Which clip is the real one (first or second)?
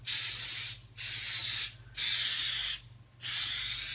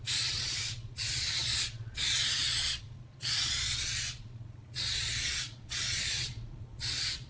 first